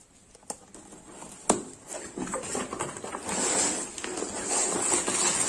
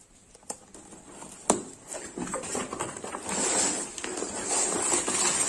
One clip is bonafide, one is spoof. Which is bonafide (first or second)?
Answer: first